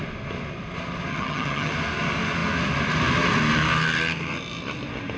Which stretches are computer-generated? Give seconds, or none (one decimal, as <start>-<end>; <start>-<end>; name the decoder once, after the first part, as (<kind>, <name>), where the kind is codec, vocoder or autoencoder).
1.1-1.7 (vocoder, HiFi-GAN)